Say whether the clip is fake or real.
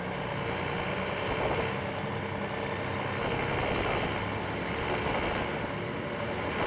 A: real